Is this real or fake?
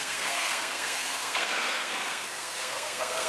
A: fake